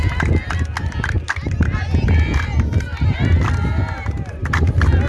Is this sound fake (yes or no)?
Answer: no